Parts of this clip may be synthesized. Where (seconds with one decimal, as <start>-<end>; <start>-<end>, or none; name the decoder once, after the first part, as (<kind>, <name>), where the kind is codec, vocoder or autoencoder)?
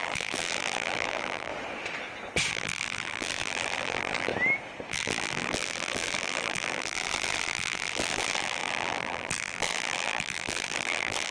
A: 0.0-1.5 (vocoder, BigVGAN v2); 2.5-4.3; 4.9-11.3